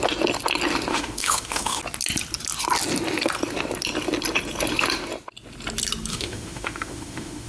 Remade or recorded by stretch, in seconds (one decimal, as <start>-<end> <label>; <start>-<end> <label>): 0.0-0.9 recorded; 0.9-1.8 remade; 1.8-6.1 recorded; 6.1-7.5 remade